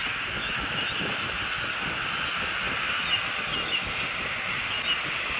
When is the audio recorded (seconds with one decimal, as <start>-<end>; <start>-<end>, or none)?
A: 0.0-0.4; 0.9-5.4